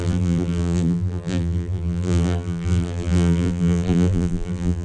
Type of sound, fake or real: fake